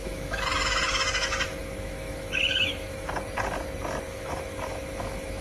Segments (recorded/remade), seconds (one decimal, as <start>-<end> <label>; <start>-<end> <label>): 0.0-3.1 remade; 3.1-4.1 recorded; 4.1-5.4 remade